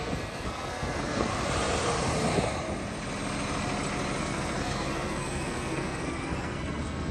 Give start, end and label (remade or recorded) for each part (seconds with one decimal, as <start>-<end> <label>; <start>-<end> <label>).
0.0-1.3 remade; 1.3-4.2 recorded; 4.2-7.1 remade